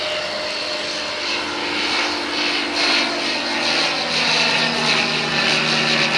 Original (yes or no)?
yes